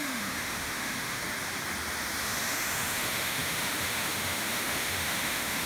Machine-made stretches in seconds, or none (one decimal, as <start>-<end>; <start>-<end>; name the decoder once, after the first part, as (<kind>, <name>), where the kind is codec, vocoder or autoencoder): 0.0-1.2 (autoencoder, DAC-VAE); 2.2-5.7